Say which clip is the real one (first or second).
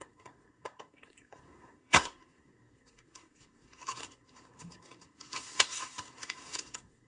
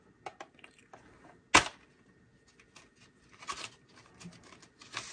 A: second